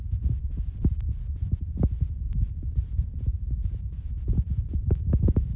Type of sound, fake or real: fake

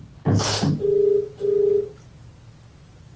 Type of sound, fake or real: real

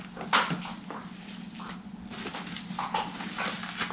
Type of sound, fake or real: real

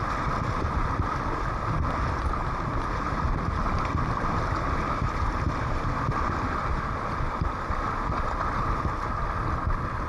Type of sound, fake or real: real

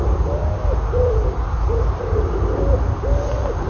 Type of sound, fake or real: real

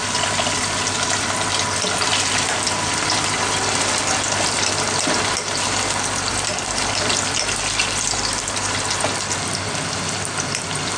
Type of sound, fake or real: real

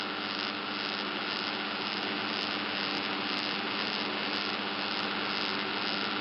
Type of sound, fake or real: real